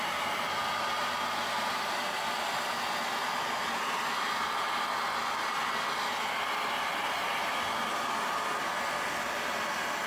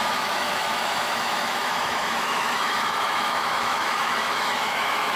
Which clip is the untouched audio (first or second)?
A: first